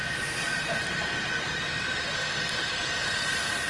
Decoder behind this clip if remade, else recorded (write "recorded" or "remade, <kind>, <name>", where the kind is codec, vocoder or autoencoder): recorded